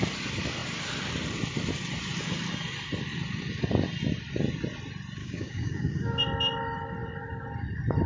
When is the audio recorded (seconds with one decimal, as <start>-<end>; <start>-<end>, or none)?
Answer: 0.0-5.2; 6.2-8.1